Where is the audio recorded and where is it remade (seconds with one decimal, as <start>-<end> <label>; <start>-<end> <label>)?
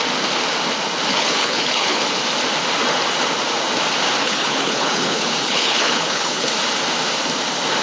0.0-1.1 recorded; 1.1-2.2 remade; 2.2-4.2 recorded; 4.2-6.5 remade; 6.5-7.8 recorded